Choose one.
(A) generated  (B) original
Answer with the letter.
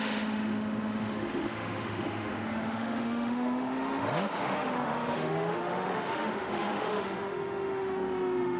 A